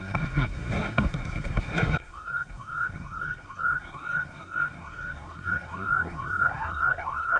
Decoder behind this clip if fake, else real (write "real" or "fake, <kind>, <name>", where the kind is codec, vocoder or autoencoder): fake, codec, SNAC